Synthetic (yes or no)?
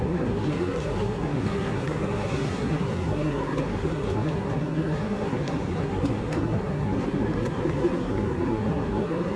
yes